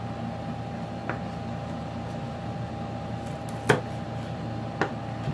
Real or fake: real